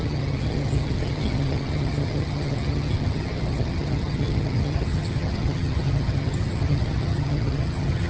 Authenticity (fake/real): fake